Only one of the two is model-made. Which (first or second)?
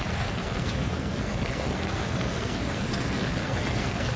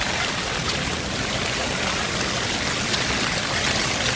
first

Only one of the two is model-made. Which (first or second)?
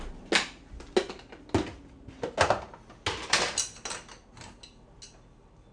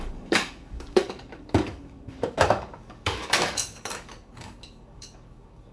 second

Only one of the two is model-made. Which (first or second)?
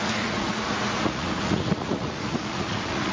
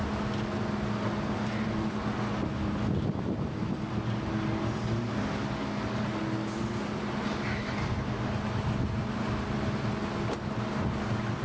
first